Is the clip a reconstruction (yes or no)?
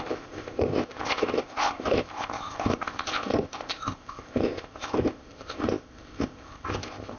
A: yes